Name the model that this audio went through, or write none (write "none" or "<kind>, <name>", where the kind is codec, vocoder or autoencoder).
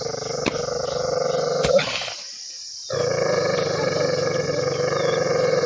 none